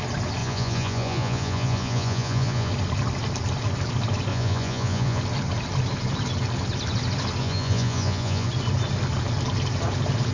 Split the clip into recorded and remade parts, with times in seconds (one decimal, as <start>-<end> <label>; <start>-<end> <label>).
0.0-0.4 recorded; 0.4-2.7 remade; 2.7-4.3 recorded; 4.3-5.2 remade; 5.2-7.4 recorded; 7.4-8.5 remade; 8.5-10.3 recorded